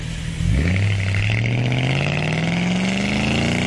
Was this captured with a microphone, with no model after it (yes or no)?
yes